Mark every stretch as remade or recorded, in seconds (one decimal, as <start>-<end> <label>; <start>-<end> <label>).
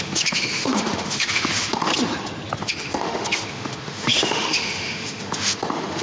0.0-1.9 remade; 1.9-2.6 recorded; 2.6-6.0 remade